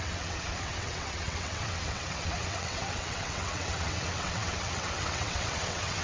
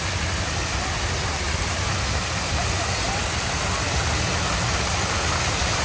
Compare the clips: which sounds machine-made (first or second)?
first